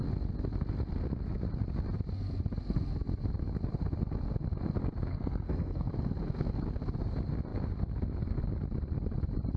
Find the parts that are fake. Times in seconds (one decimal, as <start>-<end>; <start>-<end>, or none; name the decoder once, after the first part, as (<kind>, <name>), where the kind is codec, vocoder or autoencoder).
5.1-5.9 (codec, SNAC)